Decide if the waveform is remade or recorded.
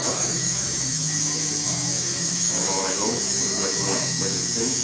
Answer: remade